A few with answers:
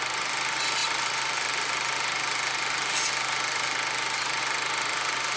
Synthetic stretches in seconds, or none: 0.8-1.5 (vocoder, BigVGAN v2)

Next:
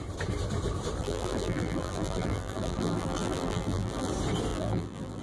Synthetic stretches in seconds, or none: 1.0-4.1 (vocoder, BigVGAN v2); 4.5-5.2

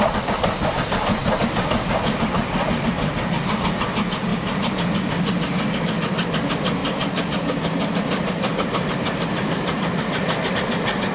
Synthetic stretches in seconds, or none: 6.8-10.5 (vocoder, BigVGAN v2)